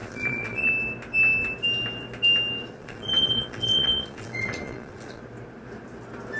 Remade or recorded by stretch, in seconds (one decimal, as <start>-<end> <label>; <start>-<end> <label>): 0.0-0.7 remade; 0.7-2.8 recorded; 2.8-5.2 remade; 5.2-6.4 recorded